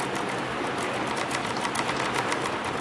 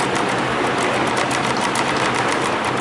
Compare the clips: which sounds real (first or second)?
second